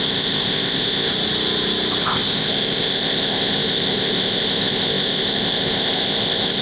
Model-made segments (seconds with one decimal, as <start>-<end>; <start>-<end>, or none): 0.0-1.1; 2.0-6.6